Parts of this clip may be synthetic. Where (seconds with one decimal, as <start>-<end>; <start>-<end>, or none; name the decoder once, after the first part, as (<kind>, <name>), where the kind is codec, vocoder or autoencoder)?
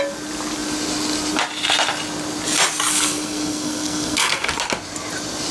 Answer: 2.9-4.5 (codec, SNAC)